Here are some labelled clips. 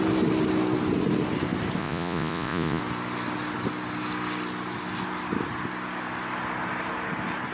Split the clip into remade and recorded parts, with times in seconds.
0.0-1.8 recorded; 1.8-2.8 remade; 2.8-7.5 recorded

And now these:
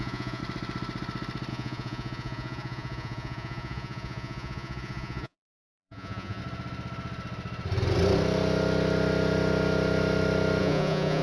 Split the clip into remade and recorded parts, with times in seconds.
0.0-0.4 remade; 0.4-1.5 recorded; 1.5-6.4 remade; 6.4-10.6 recorded; 10.6-11.2 remade

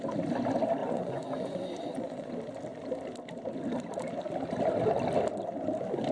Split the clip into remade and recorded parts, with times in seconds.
0.0-0.8 recorded; 0.8-2.3 remade; 2.3-6.1 recorded

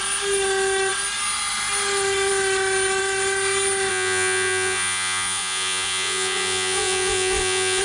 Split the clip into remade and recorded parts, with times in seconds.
0.0-3.9 recorded; 3.9-7.8 remade

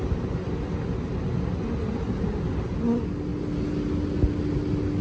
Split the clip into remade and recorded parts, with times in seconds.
0.0-5.0 recorded